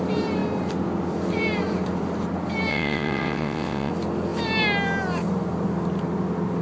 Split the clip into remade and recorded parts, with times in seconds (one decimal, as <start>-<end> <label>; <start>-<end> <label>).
0.0-2.7 recorded; 2.7-3.9 remade; 3.9-6.6 recorded